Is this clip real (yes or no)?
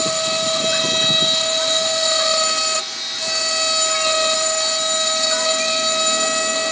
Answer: yes